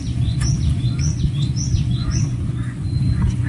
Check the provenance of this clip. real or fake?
fake